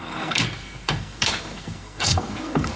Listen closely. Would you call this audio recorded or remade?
remade